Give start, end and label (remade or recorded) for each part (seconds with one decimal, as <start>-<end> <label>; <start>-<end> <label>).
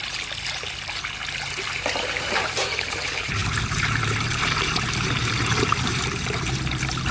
0.0-1.7 recorded; 1.7-7.1 remade